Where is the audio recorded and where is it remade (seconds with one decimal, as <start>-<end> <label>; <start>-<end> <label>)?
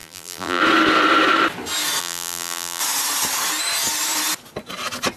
0.0-0.6 remade; 0.6-2.0 recorded; 2.0-2.8 remade; 2.8-5.2 recorded